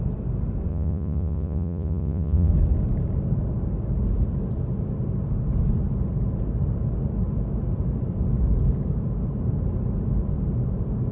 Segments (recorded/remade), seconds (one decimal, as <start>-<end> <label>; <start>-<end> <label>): 0.0-0.7 recorded; 0.7-2.5 remade; 2.5-11.1 recorded